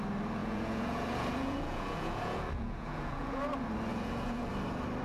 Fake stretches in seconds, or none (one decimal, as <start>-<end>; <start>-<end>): 0.4-3.4; 3.9-4.5